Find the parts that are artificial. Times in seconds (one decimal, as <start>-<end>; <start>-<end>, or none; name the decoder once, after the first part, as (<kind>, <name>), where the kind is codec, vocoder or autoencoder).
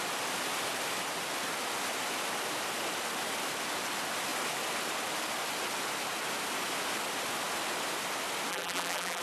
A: 8.5-9.2 (vocoder, BigVGAN v2)